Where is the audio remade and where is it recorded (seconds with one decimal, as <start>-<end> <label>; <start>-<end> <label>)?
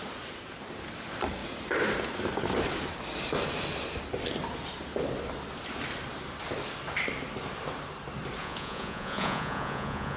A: 0.0-8.4 recorded; 8.4-10.2 remade